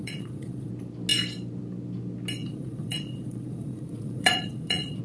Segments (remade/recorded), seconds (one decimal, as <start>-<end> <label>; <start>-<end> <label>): 0.0-0.7 remade; 0.7-2.4 recorded; 2.4-5.0 remade